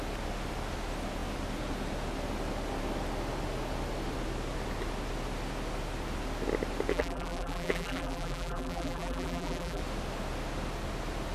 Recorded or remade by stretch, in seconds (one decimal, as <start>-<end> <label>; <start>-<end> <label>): 0.0-6.9 recorded; 6.9-9.8 remade; 9.8-11.3 recorded